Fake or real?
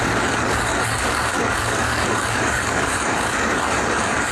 fake